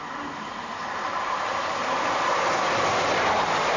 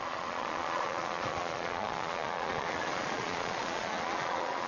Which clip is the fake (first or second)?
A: second